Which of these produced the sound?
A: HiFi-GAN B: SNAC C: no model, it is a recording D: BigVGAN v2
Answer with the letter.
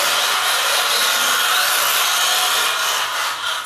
C